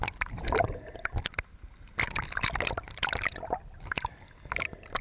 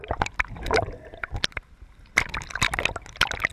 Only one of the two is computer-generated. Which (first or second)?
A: first